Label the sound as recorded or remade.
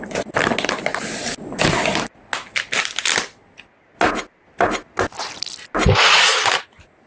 recorded